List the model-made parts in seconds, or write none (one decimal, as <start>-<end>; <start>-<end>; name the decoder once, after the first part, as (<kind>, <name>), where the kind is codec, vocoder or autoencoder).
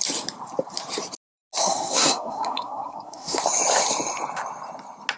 1.6-3.4 (codec, SNAC)